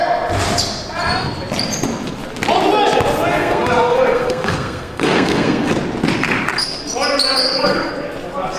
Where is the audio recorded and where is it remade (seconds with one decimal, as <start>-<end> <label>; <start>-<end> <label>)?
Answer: 0.0-3.3 recorded; 3.3-5.7 remade; 5.7-7.4 recorded; 7.4-7.9 remade; 7.9-8.6 recorded